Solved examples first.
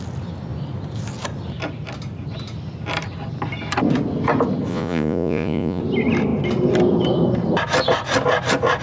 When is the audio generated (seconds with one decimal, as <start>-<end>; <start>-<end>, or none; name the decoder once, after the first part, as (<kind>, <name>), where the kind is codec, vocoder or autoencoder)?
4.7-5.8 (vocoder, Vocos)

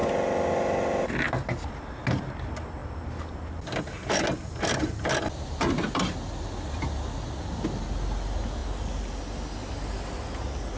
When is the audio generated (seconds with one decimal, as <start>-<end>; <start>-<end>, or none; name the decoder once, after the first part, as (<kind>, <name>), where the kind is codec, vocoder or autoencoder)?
none

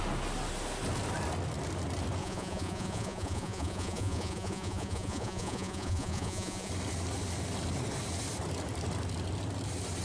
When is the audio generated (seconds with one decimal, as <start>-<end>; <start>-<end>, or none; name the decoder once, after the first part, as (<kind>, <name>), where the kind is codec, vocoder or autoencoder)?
2.2-6.7 (vocoder, Vocos)

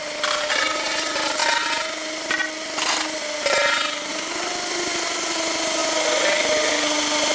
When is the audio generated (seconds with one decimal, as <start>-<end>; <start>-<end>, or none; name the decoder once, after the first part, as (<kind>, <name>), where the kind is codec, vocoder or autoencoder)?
none

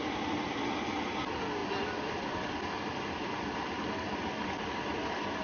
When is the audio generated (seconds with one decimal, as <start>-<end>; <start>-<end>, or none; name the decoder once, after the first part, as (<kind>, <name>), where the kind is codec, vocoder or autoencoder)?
none

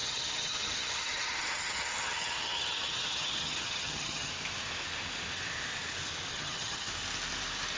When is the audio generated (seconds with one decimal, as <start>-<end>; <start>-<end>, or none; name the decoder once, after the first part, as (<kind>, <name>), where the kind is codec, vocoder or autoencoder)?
0.0-4.3 (vocoder, HiFi-GAN); 6.3-6.9